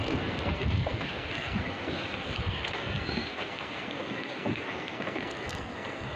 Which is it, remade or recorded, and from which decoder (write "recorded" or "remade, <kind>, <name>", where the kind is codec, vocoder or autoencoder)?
remade, codec, SNAC